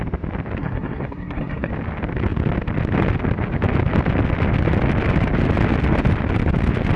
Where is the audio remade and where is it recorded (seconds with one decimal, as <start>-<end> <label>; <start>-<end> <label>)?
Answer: 0.0-0.6 recorded; 0.6-1.7 remade; 1.7-7.0 recorded